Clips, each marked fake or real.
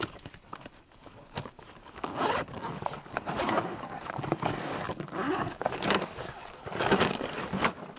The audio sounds fake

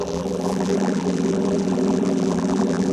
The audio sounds fake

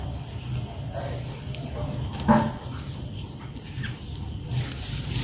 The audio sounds real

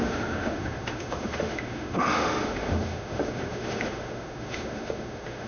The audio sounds fake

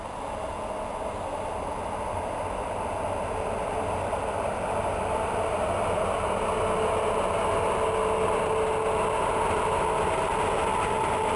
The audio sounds real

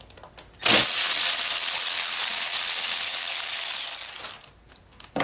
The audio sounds real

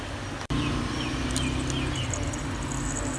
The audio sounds real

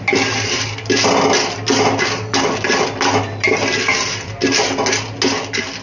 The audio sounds real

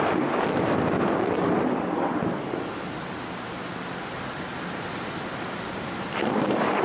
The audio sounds real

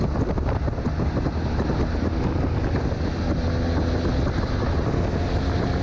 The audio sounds real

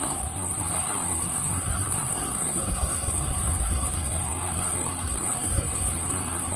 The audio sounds fake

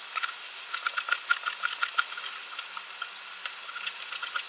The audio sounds real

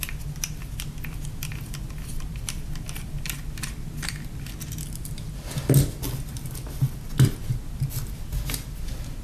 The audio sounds real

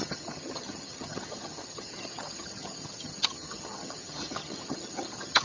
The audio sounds fake